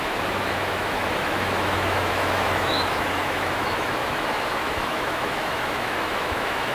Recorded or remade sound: remade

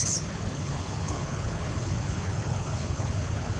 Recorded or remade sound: remade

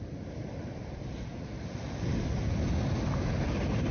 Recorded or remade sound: remade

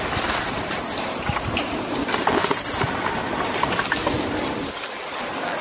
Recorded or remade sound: recorded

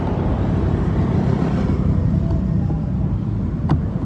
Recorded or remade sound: recorded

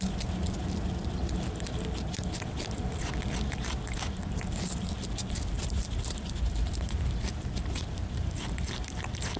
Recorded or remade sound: remade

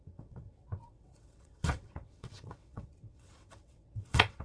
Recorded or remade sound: remade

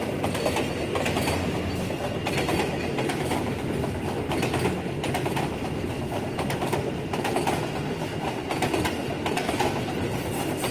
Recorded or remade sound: recorded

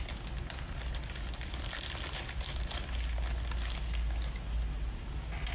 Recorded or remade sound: recorded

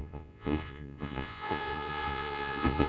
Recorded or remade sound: remade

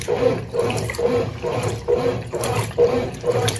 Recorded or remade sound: remade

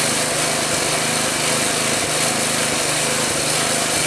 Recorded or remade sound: recorded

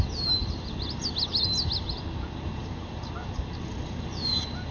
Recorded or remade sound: recorded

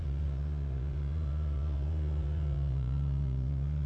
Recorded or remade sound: remade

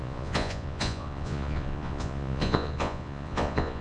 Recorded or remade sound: remade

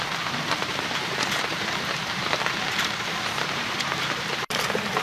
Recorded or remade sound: remade